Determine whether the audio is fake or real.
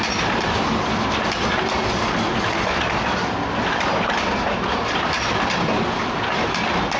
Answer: real